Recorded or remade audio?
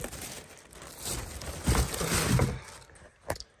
recorded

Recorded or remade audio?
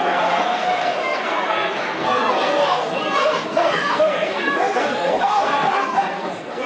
remade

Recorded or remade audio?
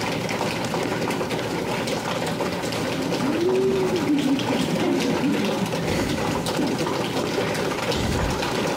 recorded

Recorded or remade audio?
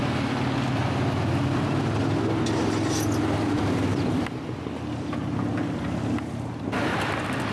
recorded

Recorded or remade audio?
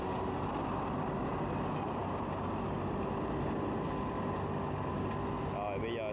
recorded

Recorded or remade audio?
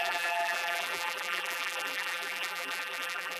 remade